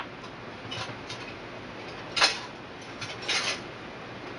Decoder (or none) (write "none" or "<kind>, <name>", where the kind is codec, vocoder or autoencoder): none